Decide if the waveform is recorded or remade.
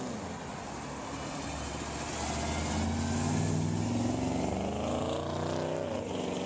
recorded